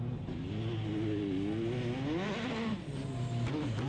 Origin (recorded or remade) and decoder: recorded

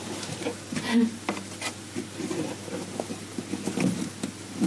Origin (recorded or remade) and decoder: recorded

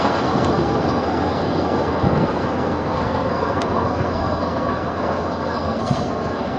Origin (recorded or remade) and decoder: remade, codec, SNAC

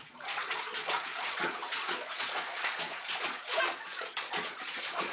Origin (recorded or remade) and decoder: remade, vocoder, Vocos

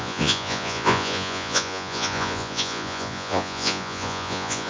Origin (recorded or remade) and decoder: remade, vocoder, Vocos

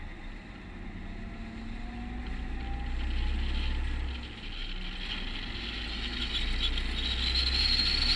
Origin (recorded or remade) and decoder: recorded